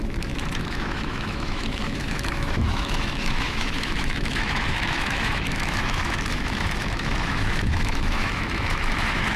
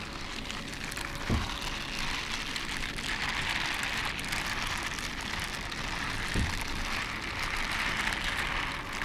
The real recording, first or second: second